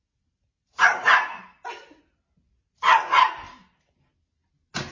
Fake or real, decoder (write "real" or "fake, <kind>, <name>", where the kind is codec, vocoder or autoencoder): real